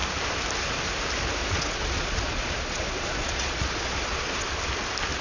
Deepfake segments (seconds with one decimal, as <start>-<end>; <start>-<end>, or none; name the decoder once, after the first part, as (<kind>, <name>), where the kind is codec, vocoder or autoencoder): 1.4-4.5 (vocoder, Vocos)